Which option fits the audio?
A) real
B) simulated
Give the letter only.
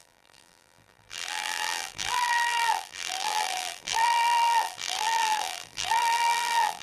B